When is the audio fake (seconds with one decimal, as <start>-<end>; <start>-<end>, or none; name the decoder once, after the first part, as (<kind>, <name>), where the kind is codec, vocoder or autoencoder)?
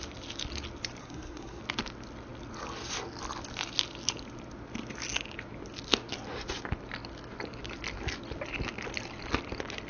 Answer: 1.0-1.6 (codec, SNAC)